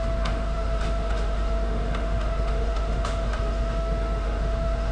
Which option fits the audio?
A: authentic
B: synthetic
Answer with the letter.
B